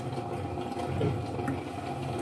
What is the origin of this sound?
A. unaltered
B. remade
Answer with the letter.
A